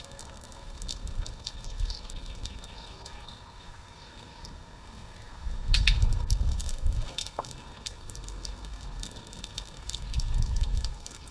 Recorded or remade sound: remade